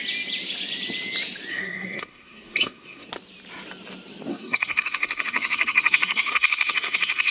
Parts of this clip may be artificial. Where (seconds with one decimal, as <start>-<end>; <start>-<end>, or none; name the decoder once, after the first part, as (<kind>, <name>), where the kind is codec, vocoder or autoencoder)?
1.5-3.1 (codec, SNAC); 4.3-7.3